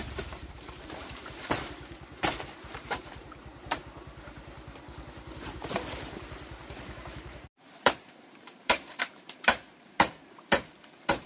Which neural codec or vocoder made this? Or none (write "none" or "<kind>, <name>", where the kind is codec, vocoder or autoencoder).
vocoder, BigVGAN v2